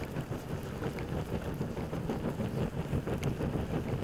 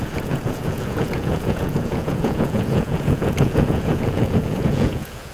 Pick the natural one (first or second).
first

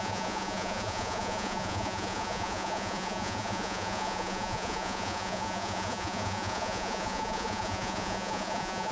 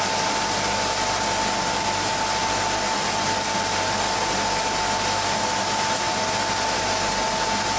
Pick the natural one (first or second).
second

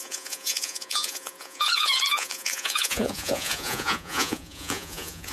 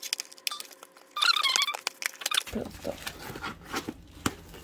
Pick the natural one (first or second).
second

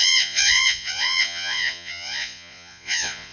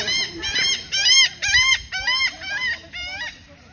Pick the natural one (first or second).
second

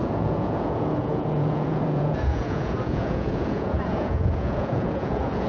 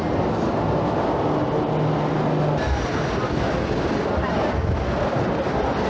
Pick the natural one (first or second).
second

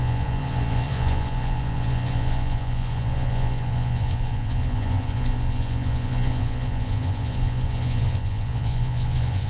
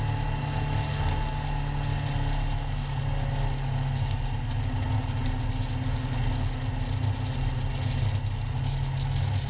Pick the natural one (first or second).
second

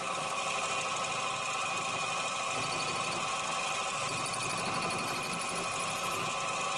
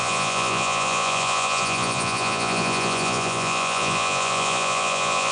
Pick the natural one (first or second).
first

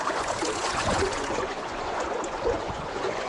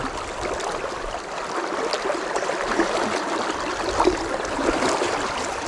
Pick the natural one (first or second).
second